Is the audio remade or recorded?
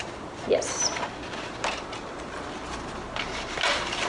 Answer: recorded